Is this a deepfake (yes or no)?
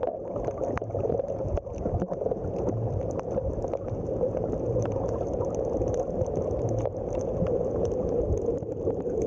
yes